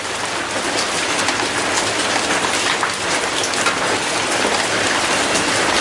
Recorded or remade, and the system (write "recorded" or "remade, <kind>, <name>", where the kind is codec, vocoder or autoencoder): recorded